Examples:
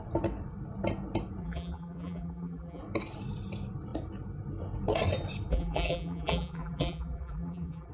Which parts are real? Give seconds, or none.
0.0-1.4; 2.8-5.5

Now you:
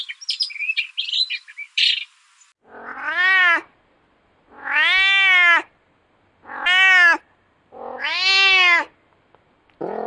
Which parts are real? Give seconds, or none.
0.0-10.1

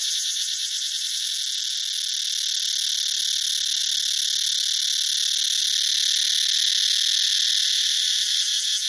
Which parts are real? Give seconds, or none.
1.3-7.8; 8.5-8.9

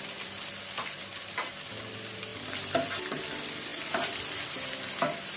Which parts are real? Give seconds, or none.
1.1-1.8

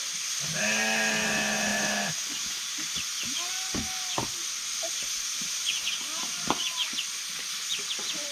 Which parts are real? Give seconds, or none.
0.0-8.3

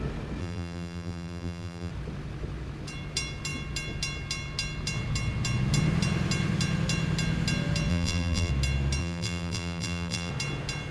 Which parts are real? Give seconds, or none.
0.0-0.4; 1.9-7.9; 8.5-9.0; 10.3-10.9